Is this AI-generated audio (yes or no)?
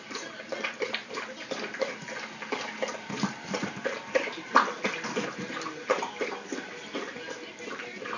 no